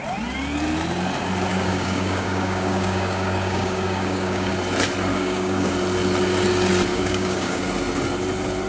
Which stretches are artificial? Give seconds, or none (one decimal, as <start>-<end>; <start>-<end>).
1.5-4.5; 5.1-5.7; 6.9-7.6